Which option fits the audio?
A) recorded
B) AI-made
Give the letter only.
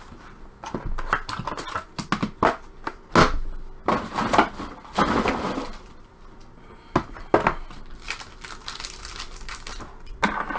A